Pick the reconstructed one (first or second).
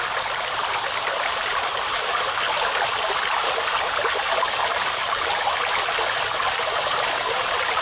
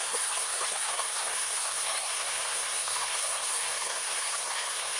second